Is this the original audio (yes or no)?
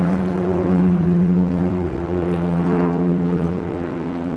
no